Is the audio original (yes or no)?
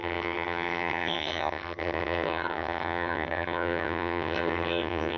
no